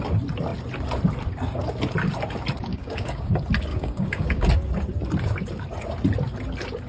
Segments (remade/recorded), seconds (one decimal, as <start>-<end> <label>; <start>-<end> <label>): 0.0-2.7 recorded; 2.7-3.3 remade; 3.3-3.7 recorded; 3.7-4.5 remade; 4.5-6.9 recorded